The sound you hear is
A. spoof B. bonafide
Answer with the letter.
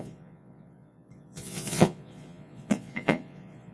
A